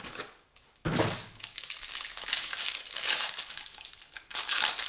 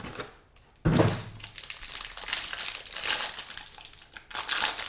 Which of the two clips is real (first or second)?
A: second